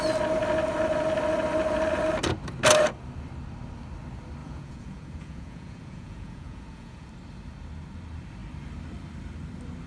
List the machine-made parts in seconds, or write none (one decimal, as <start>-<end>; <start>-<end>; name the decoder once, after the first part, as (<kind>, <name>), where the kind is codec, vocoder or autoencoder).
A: 4.4-7.1 (vocoder, Vocos)